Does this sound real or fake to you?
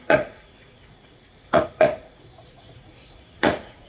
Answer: fake